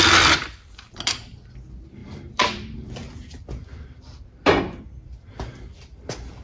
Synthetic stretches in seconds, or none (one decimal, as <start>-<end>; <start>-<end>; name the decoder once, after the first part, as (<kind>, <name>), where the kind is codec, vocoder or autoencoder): 2.0-4.6 (vocoder, BigVGAN v2)